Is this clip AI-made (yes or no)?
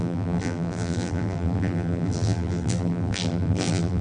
yes